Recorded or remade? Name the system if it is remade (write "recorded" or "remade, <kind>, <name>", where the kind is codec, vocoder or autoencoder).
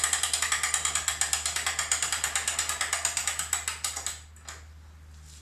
recorded